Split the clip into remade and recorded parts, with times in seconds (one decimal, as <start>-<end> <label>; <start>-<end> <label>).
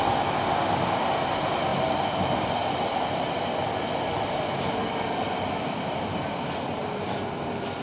0.0-7.8 recorded